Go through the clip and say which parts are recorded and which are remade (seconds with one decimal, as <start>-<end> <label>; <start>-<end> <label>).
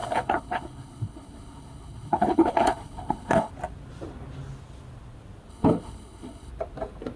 0.0-3.5 remade; 3.5-5.5 recorded; 5.5-6.5 remade; 6.5-7.2 recorded